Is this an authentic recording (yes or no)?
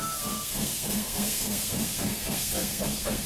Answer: no